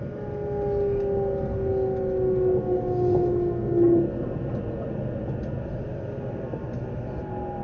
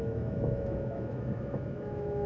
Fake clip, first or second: second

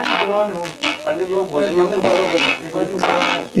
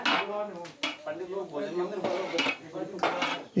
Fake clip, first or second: first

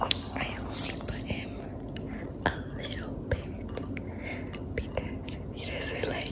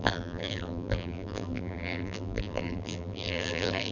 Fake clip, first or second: second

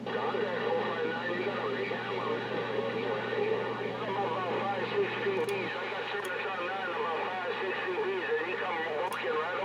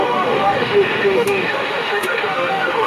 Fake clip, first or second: second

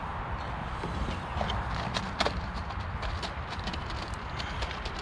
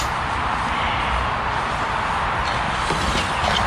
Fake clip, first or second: first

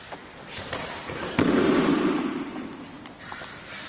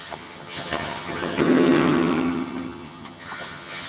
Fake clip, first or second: second